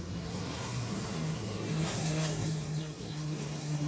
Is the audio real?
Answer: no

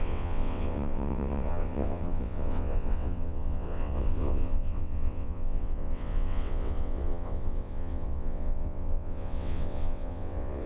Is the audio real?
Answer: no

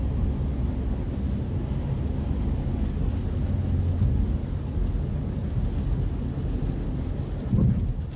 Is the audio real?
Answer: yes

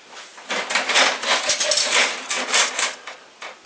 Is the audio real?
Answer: yes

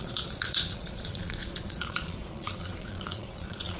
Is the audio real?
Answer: no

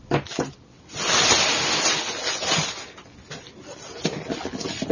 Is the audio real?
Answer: yes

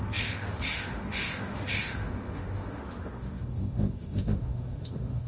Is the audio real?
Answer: no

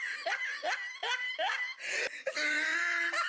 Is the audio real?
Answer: yes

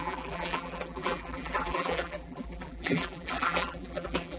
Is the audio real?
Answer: no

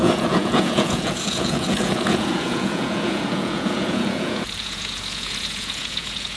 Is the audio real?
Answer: no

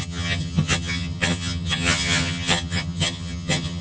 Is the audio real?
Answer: no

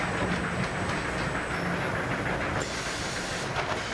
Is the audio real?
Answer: yes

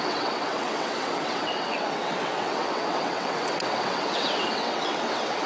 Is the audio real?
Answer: no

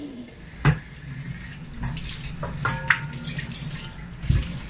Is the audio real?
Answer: yes